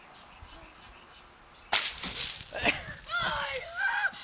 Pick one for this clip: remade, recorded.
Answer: recorded